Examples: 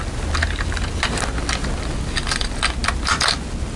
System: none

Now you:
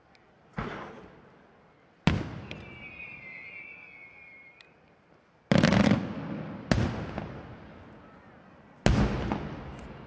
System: none